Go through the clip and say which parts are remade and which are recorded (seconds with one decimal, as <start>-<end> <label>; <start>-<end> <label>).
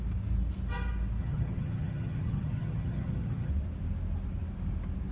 0.0-1.2 recorded; 1.2-3.5 remade; 3.5-5.1 recorded